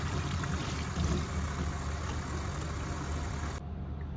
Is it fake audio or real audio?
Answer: real